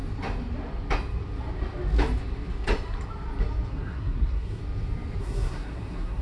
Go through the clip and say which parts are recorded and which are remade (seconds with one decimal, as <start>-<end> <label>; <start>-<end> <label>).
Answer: 0.0-3.7 recorded; 3.7-4.6 remade; 4.6-5.2 recorded; 5.2-6.2 remade